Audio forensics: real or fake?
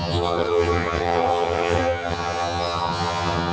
fake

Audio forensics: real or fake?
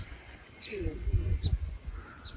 fake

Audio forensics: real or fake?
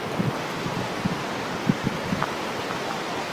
real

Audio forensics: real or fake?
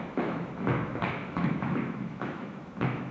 fake